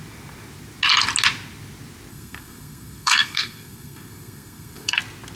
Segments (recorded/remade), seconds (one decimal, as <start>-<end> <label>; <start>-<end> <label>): 0.0-2.1 recorded; 2.1-5.0 remade; 5.0-5.4 recorded